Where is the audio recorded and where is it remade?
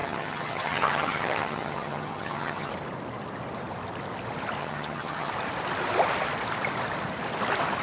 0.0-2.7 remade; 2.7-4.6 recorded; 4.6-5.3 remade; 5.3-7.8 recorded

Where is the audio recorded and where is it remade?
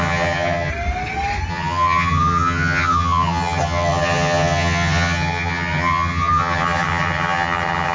0.0-0.7 remade; 0.7-1.5 recorded; 1.5-7.9 remade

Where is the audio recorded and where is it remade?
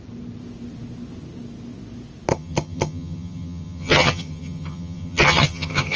0.0-2.3 recorded; 2.3-6.0 remade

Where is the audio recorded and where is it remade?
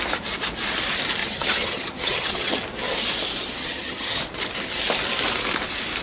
0.0-1.2 recorded; 1.2-2.6 remade; 2.6-3.6 recorded; 3.6-4.2 remade; 4.2-6.0 recorded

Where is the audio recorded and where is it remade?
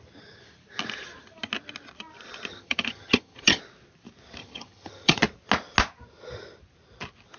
0.0-2.5 recorded; 2.5-3.6 remade; 3.6-4.4 recorded; 4.4-5.2 remade; 5.2-7.4 recorded